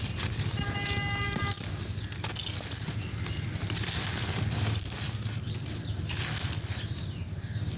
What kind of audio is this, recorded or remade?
recorded